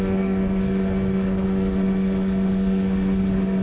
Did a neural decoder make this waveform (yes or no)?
yes